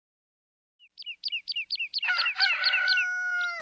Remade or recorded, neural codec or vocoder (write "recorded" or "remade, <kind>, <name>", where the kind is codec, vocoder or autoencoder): recorded